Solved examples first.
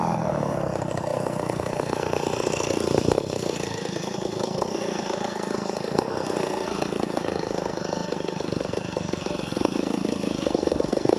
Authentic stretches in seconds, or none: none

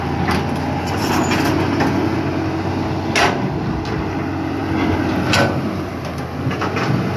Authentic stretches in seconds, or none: 0.0-7.2

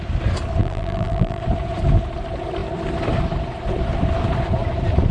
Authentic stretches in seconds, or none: 0.0-0.6; 1.4-5.1